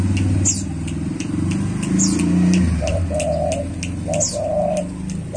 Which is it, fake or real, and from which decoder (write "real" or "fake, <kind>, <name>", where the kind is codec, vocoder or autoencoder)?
real